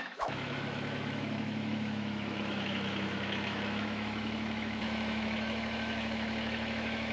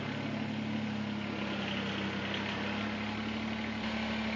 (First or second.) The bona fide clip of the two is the second